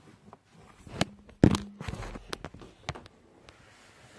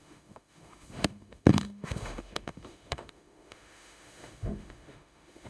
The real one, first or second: first